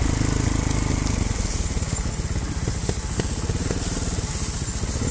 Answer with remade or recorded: recorded